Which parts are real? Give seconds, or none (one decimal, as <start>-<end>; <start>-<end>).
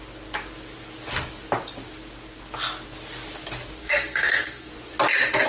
0.0-3.8; 4.7-5.5